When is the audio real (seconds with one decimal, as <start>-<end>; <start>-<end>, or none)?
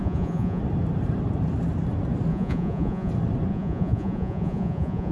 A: 0.6-2.3; 3.1-3.5